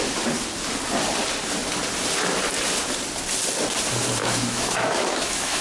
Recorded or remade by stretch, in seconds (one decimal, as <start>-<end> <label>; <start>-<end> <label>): 0.0-4.2 recorded; 4.2-5.6 remade